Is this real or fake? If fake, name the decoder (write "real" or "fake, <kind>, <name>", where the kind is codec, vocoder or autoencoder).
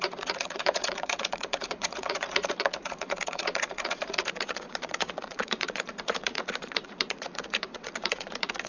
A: fake, vocoder, Vocos